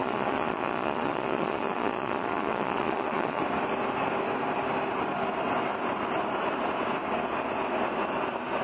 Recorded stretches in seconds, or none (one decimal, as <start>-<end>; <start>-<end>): 3.4-8.6